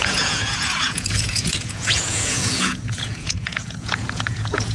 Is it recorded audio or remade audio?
remade